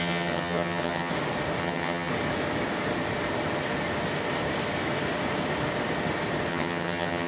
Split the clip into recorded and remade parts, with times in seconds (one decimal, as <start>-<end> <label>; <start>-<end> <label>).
0.0-1.1 remade; 1.1-1.6 recorded; 1.6-2.1 remade; 2.1-6.5 recorded; 6.5-7.3 remade